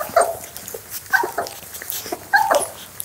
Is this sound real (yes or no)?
yes